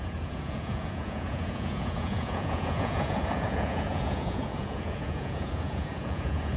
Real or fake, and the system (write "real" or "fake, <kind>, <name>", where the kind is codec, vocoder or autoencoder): fake, vocoder, Vocos